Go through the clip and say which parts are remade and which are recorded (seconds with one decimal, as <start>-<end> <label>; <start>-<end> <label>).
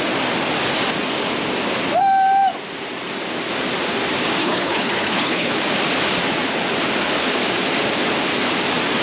0.0-4.4 recorded; 4.4-5.5 remade; 5.5-9.0 recorded